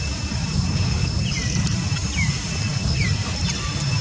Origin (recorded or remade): recorded